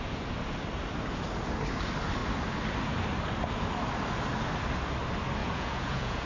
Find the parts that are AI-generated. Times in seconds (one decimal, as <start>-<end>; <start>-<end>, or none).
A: 5.4-6.3

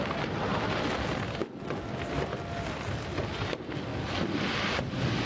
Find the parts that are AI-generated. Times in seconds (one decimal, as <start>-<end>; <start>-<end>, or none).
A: none

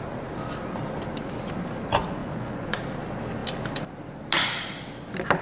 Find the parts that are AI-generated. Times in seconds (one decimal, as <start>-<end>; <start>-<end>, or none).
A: 2.2-2.8

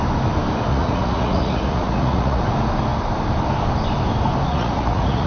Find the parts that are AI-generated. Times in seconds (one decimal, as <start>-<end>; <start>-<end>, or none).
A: 0.7-2.4; 4.5-5.3